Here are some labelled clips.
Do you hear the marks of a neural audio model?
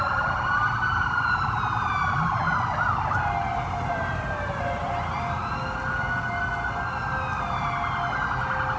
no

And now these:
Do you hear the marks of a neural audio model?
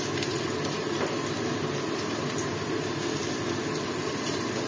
no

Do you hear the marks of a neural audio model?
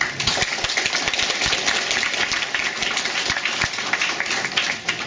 no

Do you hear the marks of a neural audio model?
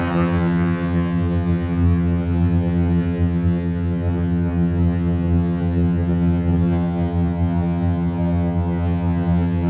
yes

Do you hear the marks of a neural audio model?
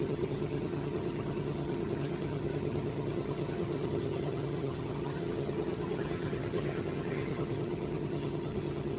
yes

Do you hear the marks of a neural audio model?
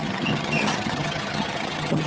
yes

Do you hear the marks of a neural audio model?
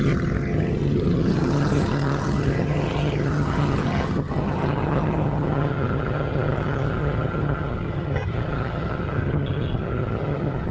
yes